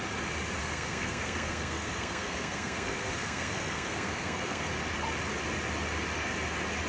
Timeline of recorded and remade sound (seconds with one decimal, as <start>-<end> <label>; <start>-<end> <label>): 0.0-0.6 recorded; 0.6-4.7 remade; 4.7-6.9 recorded